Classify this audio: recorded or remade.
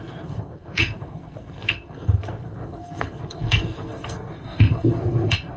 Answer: remade